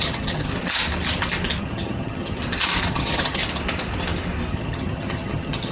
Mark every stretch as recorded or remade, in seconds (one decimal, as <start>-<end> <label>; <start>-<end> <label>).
0.0-0.5 remade; 0.5-1.6 recorded; 1.6-2.4 remade; 2.4-2.9 recorded; 2.9-3.4 remade; 3.4-4.5 recorded; 4.5-5.7 remade